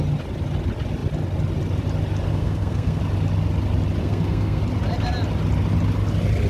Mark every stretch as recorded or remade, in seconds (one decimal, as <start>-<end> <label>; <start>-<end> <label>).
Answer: 0.0-2.3 recorded; 2.3-3.0 remade; 3.0-4.0 recorded; 4.0-4.6 remade; 4.6-6.5 recorded